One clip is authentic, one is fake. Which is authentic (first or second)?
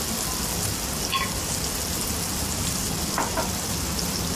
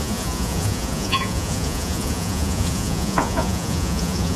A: first